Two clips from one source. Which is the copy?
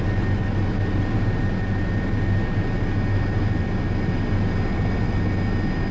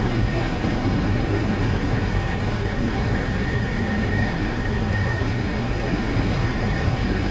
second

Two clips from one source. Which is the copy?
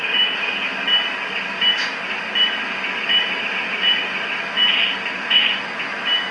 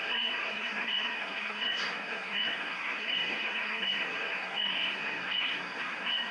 second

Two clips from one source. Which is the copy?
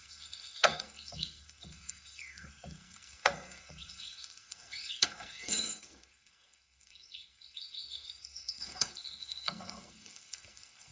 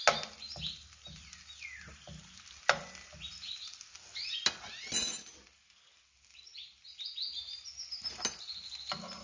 first